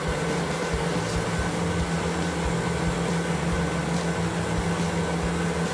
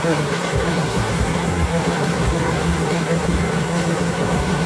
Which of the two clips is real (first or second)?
first